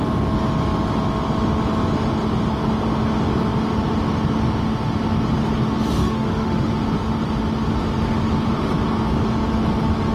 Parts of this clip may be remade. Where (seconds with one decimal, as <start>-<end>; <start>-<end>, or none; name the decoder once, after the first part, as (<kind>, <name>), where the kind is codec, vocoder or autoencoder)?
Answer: 6.0-6.7 (autoencoder, DAC-VAE)